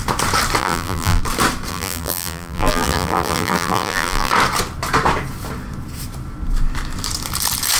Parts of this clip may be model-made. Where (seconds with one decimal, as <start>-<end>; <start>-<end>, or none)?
0.6-1.2; 1.7-4.3